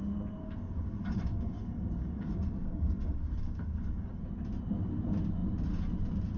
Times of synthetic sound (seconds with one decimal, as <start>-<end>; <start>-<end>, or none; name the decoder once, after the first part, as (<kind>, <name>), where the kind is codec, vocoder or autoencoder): 0.4-4.2 (codec, DAC)